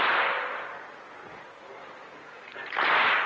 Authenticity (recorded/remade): recorded